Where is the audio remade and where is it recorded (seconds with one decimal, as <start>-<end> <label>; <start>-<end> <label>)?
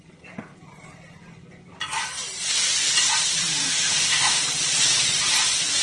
0.0-3.6 recorded; 3.6-4.4 remade; 4.4-5.8 recorded